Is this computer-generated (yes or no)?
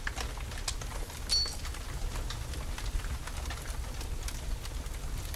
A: no